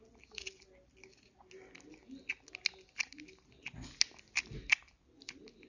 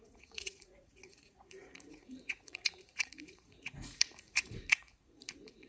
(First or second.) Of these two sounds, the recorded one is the first